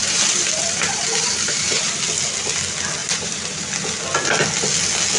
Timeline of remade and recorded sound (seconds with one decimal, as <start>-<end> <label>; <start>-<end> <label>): 0.0-1.9 remade; 1.9-3.0 recorded; 3.0-3.7 remade; 3.7-5.2 recorded